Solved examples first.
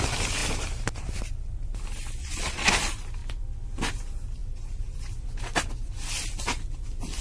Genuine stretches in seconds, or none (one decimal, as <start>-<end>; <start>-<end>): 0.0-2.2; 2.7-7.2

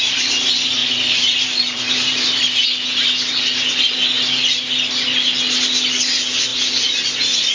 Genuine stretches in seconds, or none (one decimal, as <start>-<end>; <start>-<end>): 0.0-0.8; 2.4-7.5

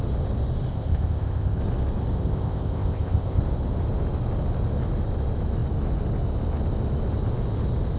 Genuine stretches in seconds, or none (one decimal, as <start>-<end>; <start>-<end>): 0.0-0.7; 1.6-2.2; 3.4-8.0

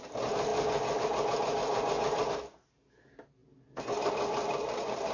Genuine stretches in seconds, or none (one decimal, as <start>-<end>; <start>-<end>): 0.0-5.1

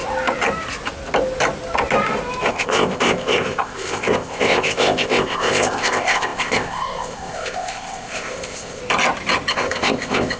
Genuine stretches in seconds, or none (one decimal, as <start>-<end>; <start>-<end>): 0.0-2.5; 8.8-9.5